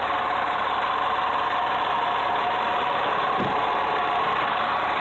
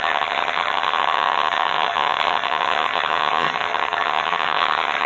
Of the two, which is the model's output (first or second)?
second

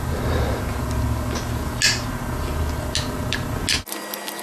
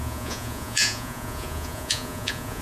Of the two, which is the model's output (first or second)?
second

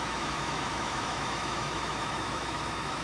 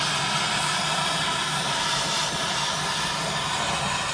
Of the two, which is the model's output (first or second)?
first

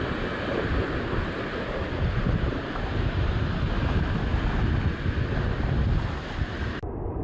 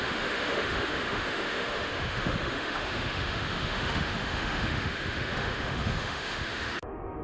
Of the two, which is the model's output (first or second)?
second